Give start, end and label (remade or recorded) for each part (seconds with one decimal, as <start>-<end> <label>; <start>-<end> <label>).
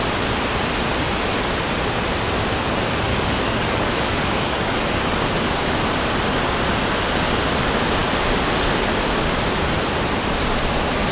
0.0-3.1 recorded; 3.1-4.8 remade; 4.8-11.1 recorded